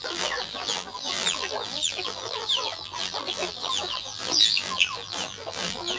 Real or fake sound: fake